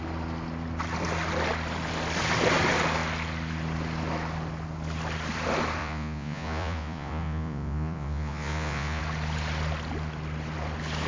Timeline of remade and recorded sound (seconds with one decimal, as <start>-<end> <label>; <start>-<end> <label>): 0.0-5.8 recorded; 5.8-9.0 remade; 9.0-11.1 recorded